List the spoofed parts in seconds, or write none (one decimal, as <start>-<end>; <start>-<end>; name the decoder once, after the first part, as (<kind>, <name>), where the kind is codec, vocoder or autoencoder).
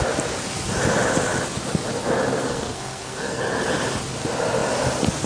2.4-3.4 (codec, SNAC)